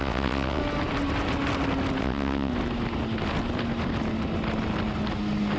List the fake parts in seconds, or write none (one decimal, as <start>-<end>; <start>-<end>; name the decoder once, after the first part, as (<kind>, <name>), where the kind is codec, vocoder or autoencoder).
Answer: 0.0-0.6 (vocoder, WaveNeXt); 2.0-2.5